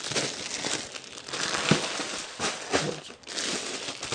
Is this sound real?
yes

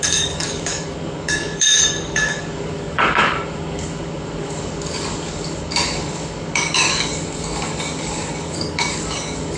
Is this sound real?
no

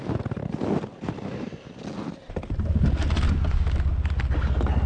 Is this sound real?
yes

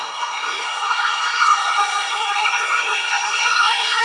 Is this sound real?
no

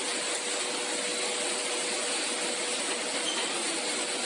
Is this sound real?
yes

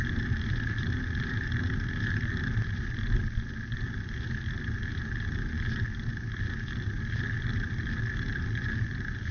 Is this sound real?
yes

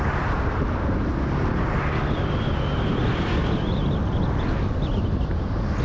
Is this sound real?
yes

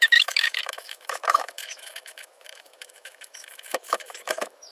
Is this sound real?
no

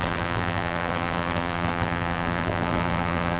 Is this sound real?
no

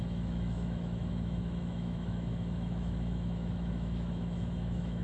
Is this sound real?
no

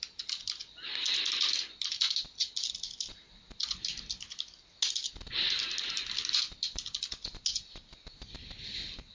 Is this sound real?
yes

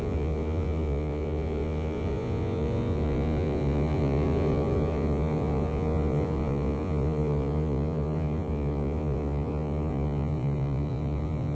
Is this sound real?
no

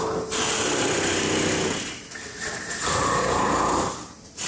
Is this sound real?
no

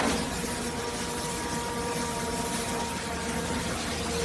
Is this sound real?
yes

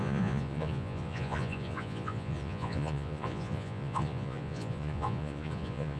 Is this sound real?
no